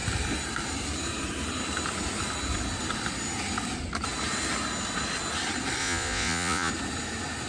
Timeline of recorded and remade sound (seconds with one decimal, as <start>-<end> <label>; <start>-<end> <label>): 0.0-5.8 recorded; 5.8-6.7 remade; 6.7-7.5 recorded